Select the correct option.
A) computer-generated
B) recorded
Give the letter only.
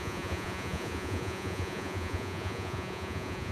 A